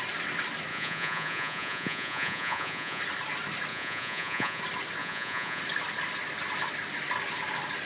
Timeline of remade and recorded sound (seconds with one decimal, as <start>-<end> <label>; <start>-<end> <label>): 0.0-0.7 recorded; 0.7-3.0 remade; 3.0-3.7 recorded; 3.7-4.6 remade; 4.6-5.0 recorded; 5.0-5.6 remade; 5.6-7.9 recorded